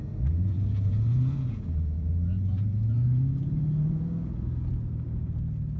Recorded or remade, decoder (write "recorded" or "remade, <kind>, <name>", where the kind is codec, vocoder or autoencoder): remade, vocoder, Vocos